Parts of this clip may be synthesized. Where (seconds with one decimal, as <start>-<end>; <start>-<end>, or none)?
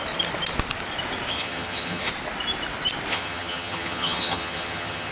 1.3-2.1; 3.1-5.1